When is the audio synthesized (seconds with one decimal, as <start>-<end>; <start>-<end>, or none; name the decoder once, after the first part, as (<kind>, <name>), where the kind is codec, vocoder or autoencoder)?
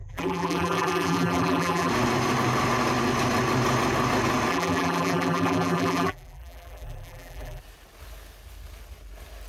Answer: 0.0-1.9 (vocoder, BigVGAN v2); 4.5-7.6